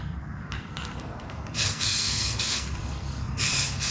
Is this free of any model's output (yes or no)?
no